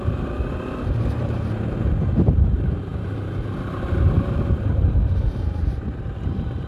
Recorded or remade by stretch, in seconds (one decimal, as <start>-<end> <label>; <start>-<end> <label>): 0.0-6.7 remade